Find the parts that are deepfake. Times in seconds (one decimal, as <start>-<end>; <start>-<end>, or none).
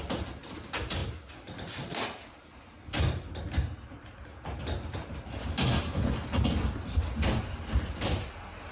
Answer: none